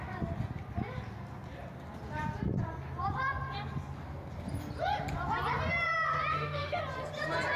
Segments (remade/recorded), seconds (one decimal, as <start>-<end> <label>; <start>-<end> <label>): 0.0-6.3 recorded; 6.3-6.8 remade; 6.8-7.6 recorded